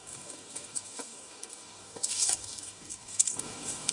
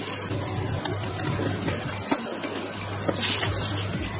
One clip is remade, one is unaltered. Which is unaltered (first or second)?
second